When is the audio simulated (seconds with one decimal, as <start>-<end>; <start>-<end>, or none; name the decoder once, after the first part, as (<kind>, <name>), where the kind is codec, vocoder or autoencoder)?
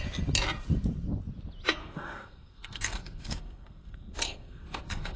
1.8-5.2 (codec, SNAC)